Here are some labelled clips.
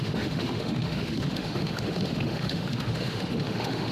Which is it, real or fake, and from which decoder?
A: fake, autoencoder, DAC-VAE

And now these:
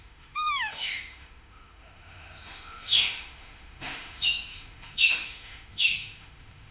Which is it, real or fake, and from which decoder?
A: fake, autoencoder, DAC-VAE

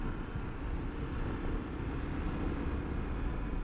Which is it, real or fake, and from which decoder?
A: real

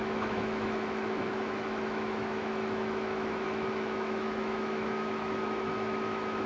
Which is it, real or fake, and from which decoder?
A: fake, autoencoder, DAC-VAE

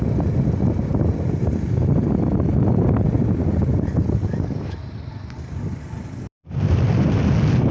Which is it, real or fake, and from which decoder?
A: real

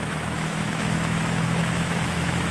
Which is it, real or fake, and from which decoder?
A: fake, autoencoder, DAC-VAE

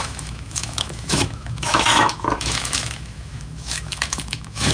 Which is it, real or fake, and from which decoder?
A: fake, autoencoder, DAC-VAE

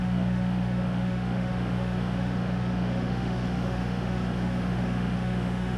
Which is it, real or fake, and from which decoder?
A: fake, autoencoder, DAC-VAE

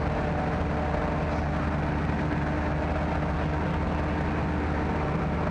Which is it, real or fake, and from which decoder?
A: real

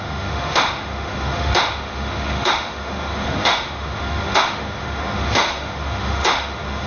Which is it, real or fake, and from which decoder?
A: fake, autoencoder, DAC-VAE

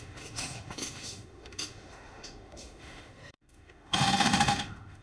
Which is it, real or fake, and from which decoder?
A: fake, autoencoder, DAC-VAE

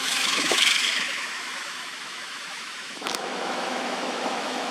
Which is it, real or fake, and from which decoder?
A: fake, autoencoder, DAC-VAE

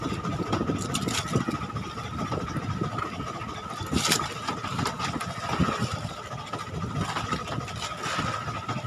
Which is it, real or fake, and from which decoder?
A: real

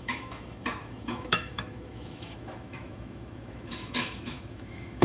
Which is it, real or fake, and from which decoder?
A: fake, autoencoder, DAC-VAE